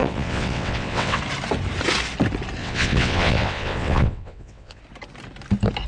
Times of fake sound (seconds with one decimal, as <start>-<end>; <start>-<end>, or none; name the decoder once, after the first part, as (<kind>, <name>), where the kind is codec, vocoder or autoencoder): 0.0-1.2 (vocoder, WaveNeXt); 2.6-4.8